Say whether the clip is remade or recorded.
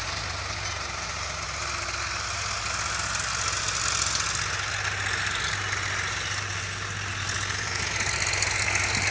recorded